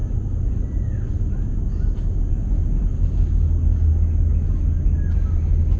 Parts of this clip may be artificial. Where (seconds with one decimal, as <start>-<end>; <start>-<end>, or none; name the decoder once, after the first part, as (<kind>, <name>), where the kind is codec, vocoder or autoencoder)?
none